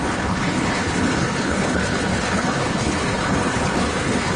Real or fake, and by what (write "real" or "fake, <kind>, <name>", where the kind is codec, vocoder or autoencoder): fake, codec, HILCodec